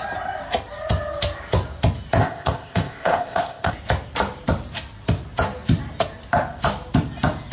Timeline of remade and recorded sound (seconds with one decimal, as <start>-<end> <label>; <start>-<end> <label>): 0.0-2.2 recorded; 2.2-3.7 remade; 3.7-7.5 recorded